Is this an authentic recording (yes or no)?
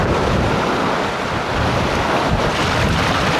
yes